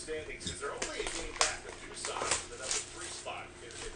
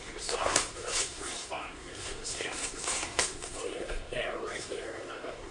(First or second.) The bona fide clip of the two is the first